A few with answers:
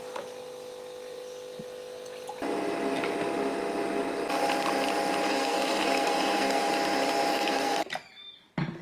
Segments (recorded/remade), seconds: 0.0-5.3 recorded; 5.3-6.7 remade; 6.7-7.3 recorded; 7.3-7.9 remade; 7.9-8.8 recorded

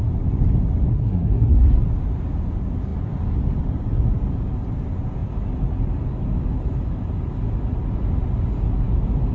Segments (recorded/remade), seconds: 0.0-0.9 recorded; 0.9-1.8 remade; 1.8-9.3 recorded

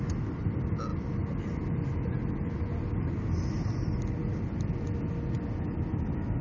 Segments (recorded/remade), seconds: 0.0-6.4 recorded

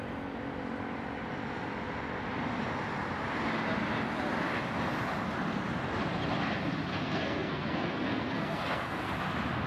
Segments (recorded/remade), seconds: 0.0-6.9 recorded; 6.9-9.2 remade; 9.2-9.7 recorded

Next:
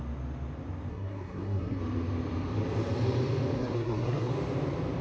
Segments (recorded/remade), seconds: 0.0-0.9 recorded; 0.9-1.8 remade; 1.8-3.6 recorded; 3.6-4.3 remade; 4.3-5.0 recorded

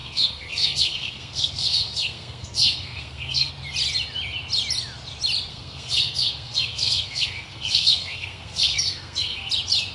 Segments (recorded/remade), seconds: 0.0-3.5 remade; 3.5-5.5 recorded; 5.5-9.5 remade; 9.5-9.9 recorded

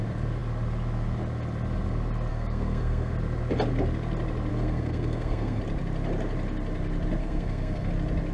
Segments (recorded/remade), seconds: 0.0-2.3 recorded; 2.3-3.1 remade; 3.1-4.5 recorded; 4.5-5.6 remade; 5.6-7.2 recorded; 7.2-7.9 remade; 7.9-8.3 recorded